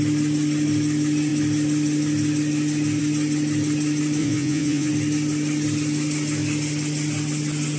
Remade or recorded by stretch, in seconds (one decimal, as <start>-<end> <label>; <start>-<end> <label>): 0.0-4.2 recorded; 4.2-4.9 remade; 4.9-7.8 recorded